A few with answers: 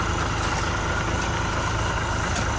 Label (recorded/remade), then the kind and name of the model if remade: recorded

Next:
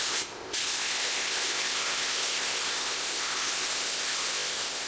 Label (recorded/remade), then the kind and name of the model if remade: remade, codec, ZipCodec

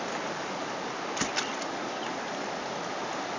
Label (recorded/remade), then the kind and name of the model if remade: recorded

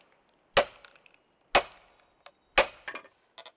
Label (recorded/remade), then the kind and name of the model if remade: recorded